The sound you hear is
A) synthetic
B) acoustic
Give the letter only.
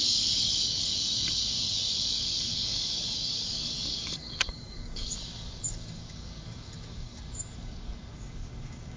A